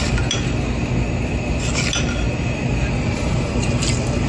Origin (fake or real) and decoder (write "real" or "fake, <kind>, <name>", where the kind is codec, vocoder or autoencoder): real